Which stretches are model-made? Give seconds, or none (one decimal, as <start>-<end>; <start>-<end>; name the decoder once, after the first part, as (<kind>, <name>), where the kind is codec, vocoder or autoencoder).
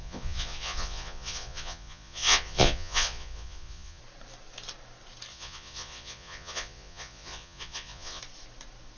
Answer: 0.0-4.0 (vocoder, Vocos); 5.3-8.2